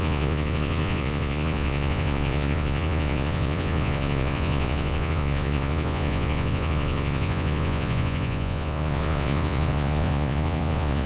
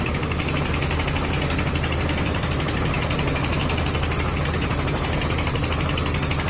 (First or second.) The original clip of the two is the second